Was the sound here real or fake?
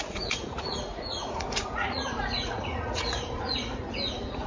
fake